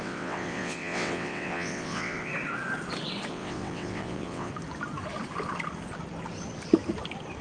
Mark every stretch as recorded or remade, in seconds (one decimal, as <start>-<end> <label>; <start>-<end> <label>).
0.0-2.3 remade; 2.3-3.3 recorded; 3.3-4.5 remade; 4.5-7.4 recorded